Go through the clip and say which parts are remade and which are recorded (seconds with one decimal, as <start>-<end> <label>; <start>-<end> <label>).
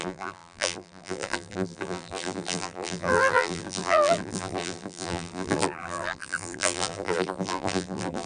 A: 0.0-8.3 remade